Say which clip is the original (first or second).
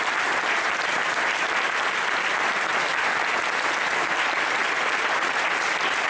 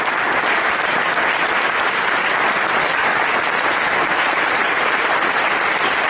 first